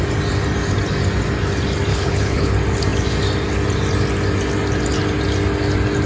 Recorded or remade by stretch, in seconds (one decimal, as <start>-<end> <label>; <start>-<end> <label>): 0.0-1.9 recorded; 1.9-2.5 remade; 2.5-6.1 recorded